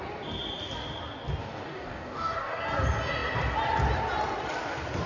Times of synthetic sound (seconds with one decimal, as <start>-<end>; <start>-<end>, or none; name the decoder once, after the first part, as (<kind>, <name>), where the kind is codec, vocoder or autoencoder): 1.4-2.6 (codec, DAC)